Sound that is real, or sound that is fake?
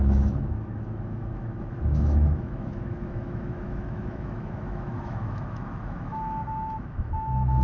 fake